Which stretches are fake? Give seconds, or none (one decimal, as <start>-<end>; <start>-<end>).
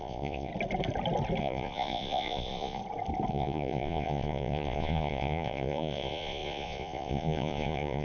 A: 0.0-0.5; 1.4-2.8; 3.3-8.0